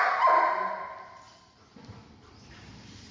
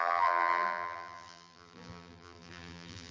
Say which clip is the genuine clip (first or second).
first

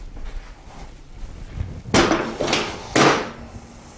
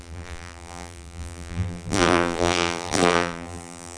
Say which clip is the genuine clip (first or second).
first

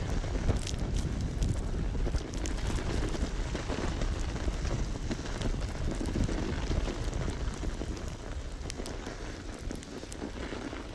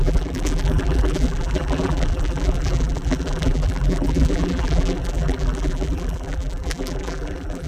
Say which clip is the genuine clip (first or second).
first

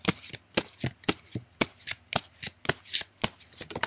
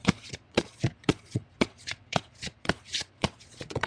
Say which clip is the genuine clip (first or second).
first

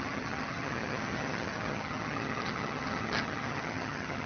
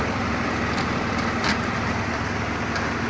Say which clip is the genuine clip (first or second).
second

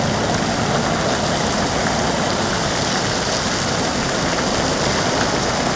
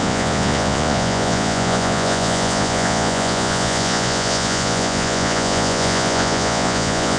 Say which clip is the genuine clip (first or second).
first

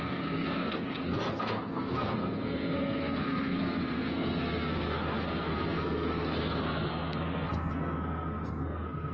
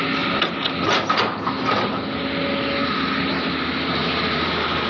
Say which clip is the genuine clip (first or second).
second